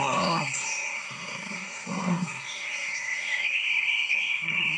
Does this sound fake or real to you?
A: fake